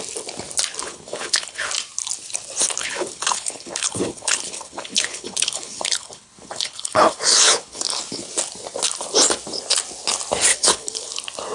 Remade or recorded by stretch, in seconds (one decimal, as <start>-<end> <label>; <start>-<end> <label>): 0.0-0.8 recorded; 0.8-1.7 remade; 1.7-2.8 recorded; 2.8-7.8 remade; 7.8-10.5 recorded; 10.5-11.1 remade; 11.1-11.5 recorded